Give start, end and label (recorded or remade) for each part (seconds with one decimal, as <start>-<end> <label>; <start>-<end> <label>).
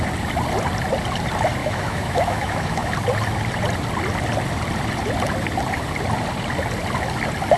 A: 0.0-1.6 recorded; 1.6-2.9 remade; 2.9-7.6 recorded